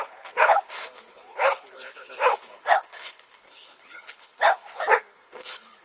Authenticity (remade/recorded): remade